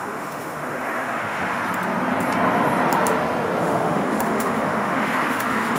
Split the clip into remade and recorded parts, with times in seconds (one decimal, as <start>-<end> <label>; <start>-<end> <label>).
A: 0.0-1.6 remade; 1.6-3.6 recorded; 3.6-5.8 remade